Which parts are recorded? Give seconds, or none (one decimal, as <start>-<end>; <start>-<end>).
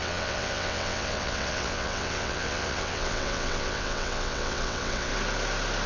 5.1-5.9